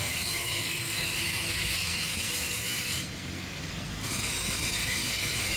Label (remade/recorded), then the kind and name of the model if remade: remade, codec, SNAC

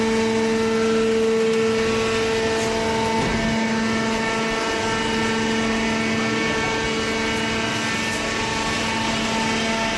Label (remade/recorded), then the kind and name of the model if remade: recorded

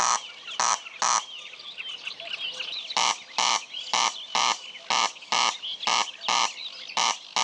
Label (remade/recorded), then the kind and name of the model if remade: recorded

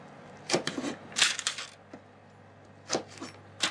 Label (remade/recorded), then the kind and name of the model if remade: recorded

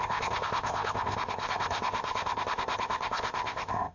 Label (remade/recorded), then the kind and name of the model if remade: remade, codec, ZipCodec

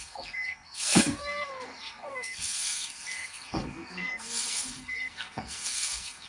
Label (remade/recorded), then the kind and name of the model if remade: remade, codec, SNAC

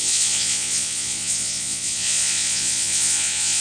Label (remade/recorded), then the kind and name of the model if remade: remade, vocoder, Vocos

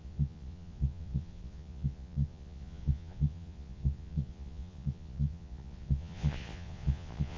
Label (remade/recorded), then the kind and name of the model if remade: remade, vocoder, Vocos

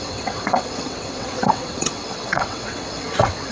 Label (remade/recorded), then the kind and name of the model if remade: remade, vocoder, WaveNeXt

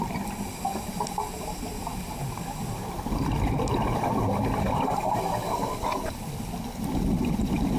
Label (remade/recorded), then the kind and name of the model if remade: recorded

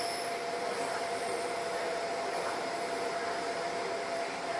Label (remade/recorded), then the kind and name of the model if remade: remade, vocoder, BigVGAN v2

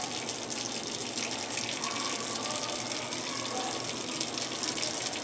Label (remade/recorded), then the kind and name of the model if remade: recorded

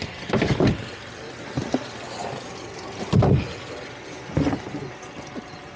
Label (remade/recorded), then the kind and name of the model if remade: recorded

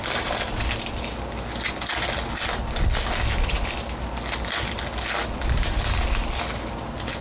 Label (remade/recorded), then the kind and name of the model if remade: recorded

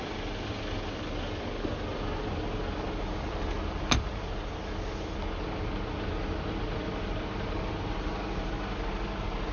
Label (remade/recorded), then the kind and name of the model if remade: recorded